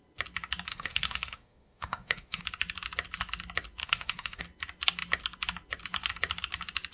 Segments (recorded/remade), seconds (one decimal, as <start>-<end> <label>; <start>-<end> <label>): 0.0-0.7 recorded; 0.7-2.4 remade; 2.4-3.8 recorded; 3.8-4.4 remade; 4.4-6.9 recorded

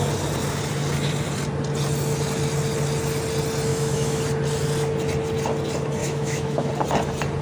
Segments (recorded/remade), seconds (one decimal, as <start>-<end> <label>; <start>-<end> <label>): 0.0-3.7 recorded; 3.7-4.2 remade; 4.2-6.0 recorded; 6.0-6.7 remade; 6.7-7.4 recorded